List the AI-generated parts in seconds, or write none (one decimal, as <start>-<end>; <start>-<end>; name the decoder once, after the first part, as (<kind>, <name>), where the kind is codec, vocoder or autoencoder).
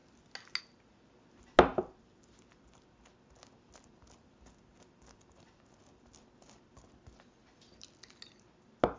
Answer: none